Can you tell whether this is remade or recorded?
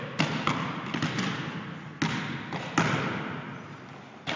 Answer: recorded